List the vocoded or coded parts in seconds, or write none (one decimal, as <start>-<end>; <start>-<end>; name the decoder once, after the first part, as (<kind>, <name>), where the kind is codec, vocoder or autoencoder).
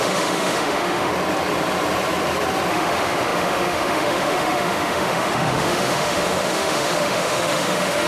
0.0-1.1 (autoencoder, DAC-VAE); 2.7-8.1